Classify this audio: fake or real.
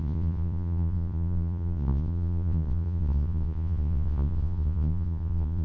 fake